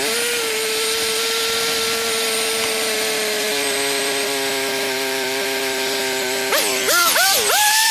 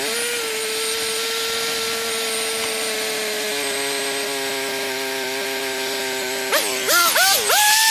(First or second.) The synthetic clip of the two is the first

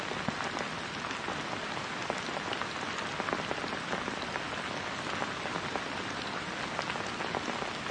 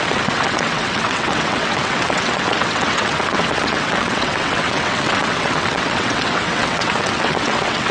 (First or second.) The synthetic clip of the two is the second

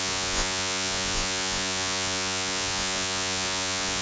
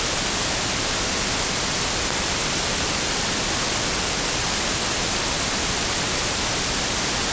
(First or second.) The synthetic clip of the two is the first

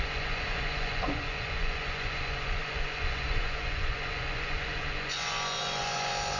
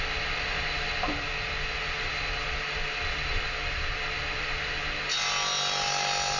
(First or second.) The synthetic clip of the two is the first